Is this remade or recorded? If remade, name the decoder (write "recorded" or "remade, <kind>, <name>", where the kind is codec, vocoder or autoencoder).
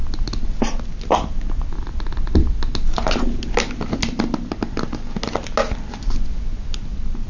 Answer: recorded